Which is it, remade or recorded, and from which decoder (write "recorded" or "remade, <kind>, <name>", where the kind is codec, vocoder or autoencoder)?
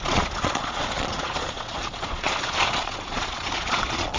remade, vocoder, Vocos